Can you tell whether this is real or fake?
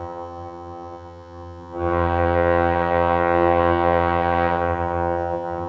fake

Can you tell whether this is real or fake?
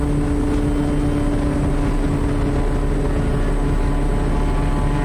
real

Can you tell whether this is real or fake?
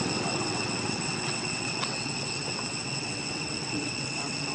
fake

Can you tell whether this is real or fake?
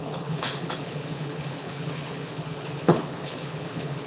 fake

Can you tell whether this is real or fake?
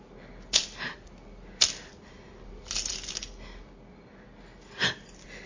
real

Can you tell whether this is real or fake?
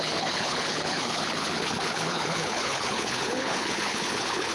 fake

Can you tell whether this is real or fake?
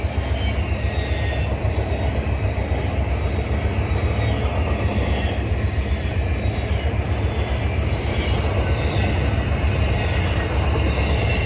real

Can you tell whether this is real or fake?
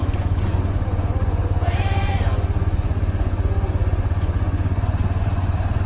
fake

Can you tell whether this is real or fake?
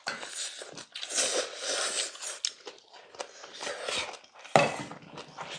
real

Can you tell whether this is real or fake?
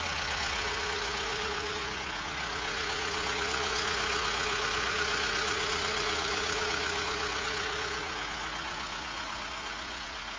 fake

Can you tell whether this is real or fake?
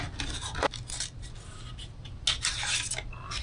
real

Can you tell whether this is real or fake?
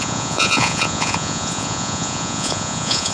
fake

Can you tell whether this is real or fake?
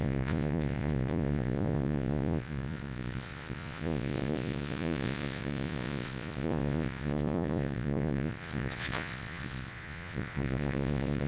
fake